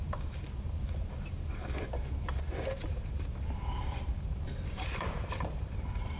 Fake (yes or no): yes